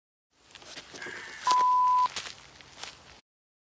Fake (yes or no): no